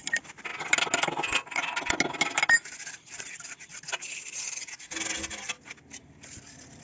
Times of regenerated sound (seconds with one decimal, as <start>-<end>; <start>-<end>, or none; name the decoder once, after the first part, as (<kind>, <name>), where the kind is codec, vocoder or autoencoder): none